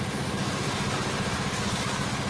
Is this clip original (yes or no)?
yes